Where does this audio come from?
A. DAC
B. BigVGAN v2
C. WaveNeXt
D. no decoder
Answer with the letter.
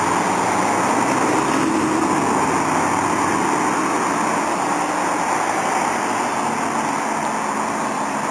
D